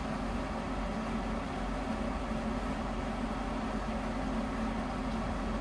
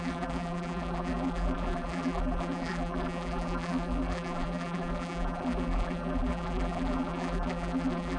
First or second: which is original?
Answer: first